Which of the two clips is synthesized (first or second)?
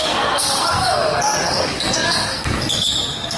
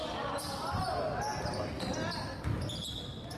first